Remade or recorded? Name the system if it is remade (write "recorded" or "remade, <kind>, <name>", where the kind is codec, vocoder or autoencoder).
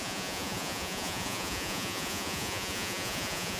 remade, vocoder, Vocos